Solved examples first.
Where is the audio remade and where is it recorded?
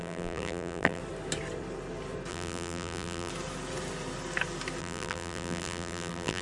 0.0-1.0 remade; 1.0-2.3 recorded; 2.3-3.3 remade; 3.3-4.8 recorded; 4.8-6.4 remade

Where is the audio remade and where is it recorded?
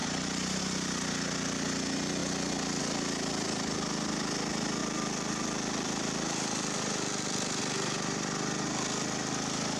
0.0-4.8 recorded; 4.8-7.6 remade; 7.6-9.8 recorded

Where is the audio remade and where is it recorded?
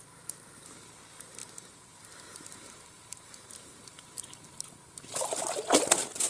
0.0-1.4 recorded; 1.4-4.4 remade; 4.4-6.3 recorded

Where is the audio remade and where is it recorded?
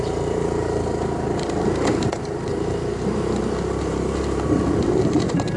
0.0-2.5 remade; 2.5-3.8 recorded; 3.8-5.6 remade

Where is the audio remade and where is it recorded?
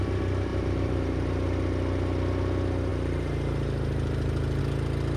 0.0-0.5 recorded; 0.5-1.1 remade; 1.1-2.9 recorded; 2.9-4.6 remade; 4.6-5.2 recorded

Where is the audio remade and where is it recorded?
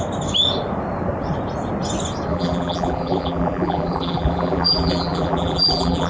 0.0-2.3 recorded; 2.3-6.1 remade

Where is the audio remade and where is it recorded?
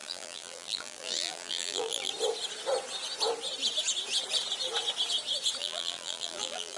0.0-2.1 remade; 2.1-5.6 recorded; 5.6-6.8 remade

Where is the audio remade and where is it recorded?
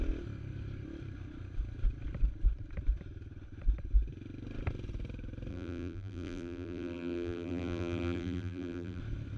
0.0-5.5 recorded; 5.5-9.0 remade; 9.0-9.4 recorded